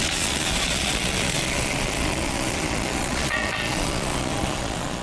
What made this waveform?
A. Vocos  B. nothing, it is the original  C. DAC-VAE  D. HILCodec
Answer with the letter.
A